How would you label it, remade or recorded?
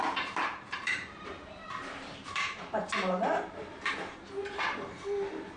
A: remade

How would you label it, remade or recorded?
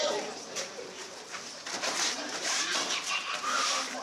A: remade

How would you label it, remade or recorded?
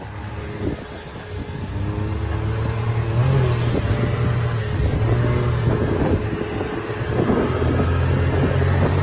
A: recorded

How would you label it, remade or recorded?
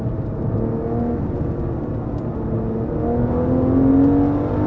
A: recorded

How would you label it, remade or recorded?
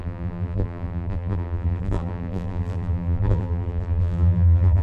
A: remade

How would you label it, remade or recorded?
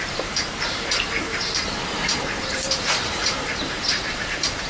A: remade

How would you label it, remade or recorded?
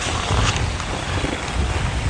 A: recorded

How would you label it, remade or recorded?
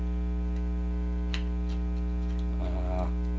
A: recorded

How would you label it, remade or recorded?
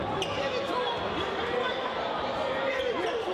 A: recorded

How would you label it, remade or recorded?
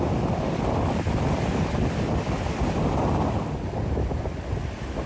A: recorded